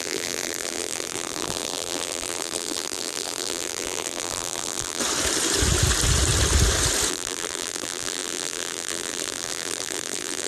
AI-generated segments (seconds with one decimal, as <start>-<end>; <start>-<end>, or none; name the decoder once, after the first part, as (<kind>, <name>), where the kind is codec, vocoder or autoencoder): 0.0-5.0 (vocoder, BigVGAN v2); 7.1-10.5